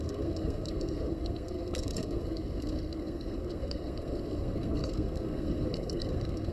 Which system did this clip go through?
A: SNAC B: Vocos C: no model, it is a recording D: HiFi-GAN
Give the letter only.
A